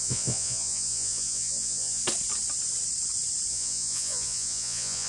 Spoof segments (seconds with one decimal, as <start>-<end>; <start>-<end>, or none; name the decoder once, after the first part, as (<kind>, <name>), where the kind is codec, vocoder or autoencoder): 0.0-2.0 (vocoder, Vocos); 3.5-5.1